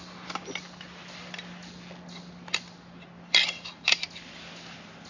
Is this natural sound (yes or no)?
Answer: yes